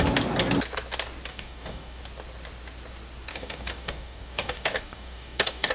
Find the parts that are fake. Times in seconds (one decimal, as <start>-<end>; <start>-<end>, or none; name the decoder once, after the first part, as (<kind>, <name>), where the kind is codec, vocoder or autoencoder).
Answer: 1.3-2.0 (codec, DAC); 3.3-5.7